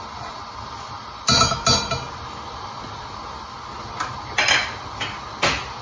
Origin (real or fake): real